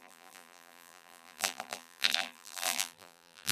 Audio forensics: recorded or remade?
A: remade